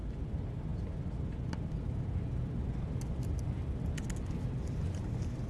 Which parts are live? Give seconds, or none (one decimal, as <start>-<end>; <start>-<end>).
0.0-5.5